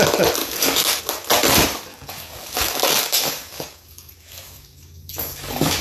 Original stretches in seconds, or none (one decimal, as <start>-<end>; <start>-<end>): 0.0-0.4; 1.0-1.9